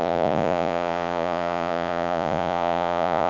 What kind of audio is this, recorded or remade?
remade